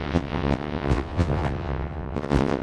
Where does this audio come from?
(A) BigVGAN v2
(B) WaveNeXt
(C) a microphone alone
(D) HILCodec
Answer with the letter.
B